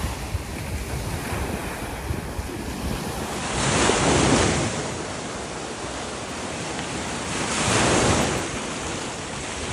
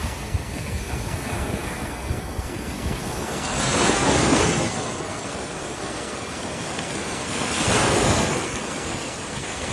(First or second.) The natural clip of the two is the first